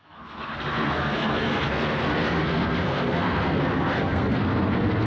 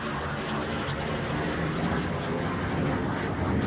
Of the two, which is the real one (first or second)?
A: second